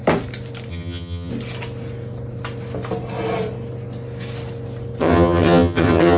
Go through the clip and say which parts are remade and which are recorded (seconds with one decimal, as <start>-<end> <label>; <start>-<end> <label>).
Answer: 0.0-0.7 recorded; 0.7-1.3 remade; 1.3-5.0 recorded; 5.0-6.2 remade